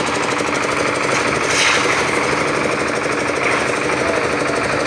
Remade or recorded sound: recorded